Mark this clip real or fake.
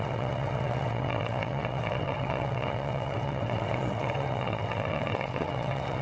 fake